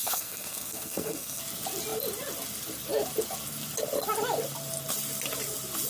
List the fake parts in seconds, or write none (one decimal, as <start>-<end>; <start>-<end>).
0.0-1.4